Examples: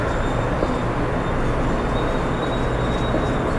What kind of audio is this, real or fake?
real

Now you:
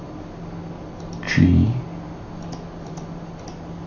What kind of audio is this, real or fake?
real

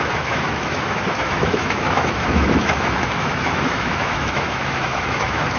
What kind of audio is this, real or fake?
fake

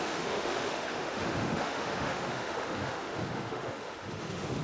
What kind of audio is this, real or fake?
fake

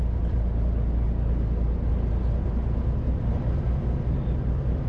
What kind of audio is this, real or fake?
real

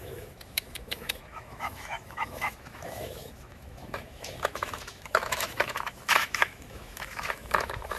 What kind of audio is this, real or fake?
fake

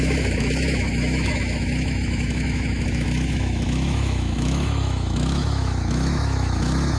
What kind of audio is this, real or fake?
fake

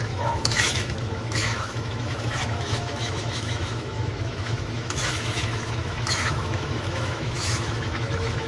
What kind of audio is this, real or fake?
fake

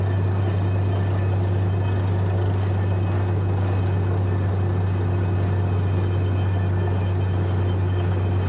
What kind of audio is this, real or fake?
real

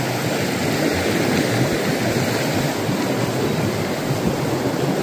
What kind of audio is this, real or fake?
real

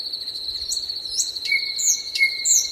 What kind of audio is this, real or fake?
real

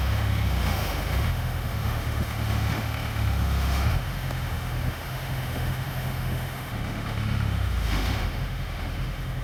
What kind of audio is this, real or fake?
fake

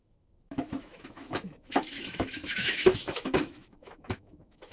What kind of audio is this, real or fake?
fake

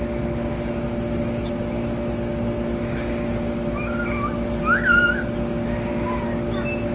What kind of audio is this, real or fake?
real